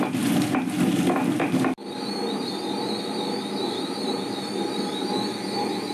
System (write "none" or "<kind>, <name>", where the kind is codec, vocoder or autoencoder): none